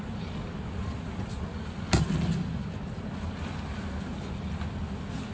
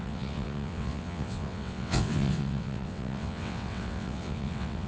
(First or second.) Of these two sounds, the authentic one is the first